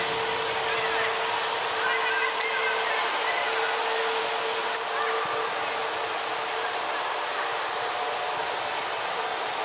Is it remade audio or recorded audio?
recorded